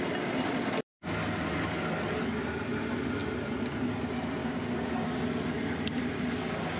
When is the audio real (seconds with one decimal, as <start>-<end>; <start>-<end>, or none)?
0.0-4.4; 5.2-6.8